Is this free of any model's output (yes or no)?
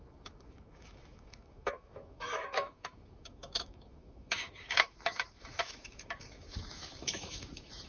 no